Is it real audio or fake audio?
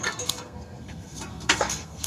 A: fake